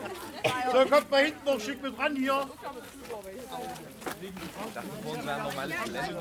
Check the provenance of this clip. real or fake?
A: real